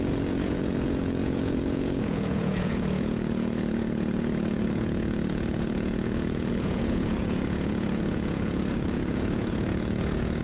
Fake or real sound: fake